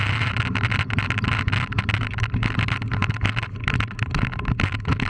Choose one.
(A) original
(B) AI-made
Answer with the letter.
A